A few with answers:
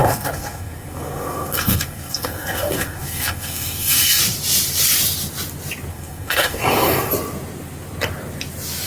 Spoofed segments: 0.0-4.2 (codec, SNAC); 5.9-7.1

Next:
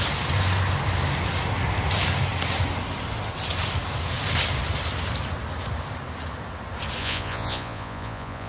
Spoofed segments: 7.0-8.5 (vocoder, Vocos)

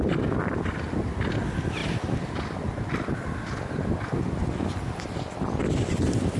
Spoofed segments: none

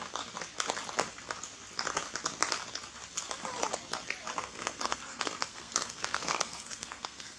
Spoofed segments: 4.4-7.4 (codec, SNAC)

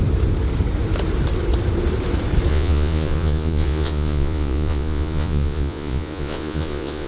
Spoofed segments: 2.5-7.1 (vocoder, Vocos)

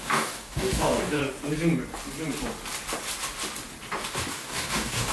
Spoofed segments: 0.0-1.2 (codec, DAC); 4.3-5.1